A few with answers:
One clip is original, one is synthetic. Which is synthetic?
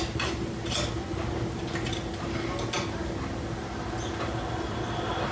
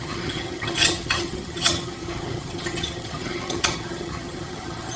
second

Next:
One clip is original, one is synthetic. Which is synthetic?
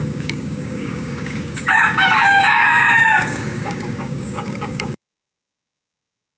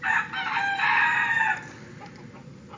first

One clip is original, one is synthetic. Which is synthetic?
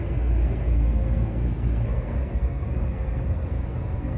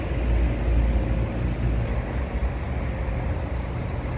first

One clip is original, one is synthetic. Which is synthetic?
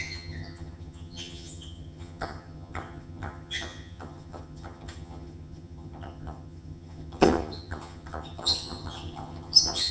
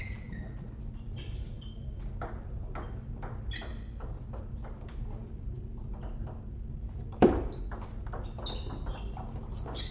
first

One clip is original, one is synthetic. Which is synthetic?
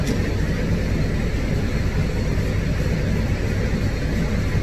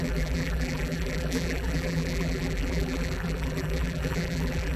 second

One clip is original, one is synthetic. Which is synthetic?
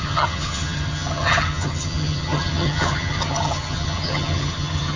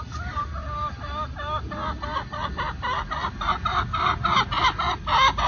first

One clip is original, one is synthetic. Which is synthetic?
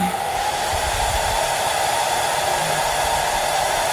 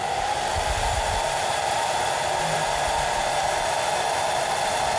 first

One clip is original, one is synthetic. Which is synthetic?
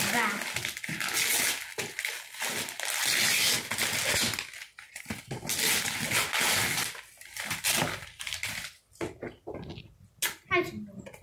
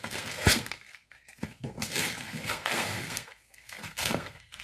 second